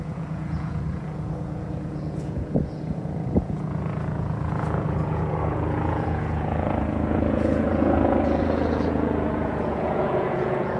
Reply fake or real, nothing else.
fake